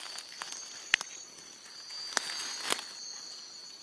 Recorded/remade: recorded